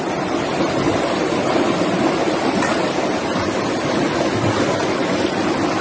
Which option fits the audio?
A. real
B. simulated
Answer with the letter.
A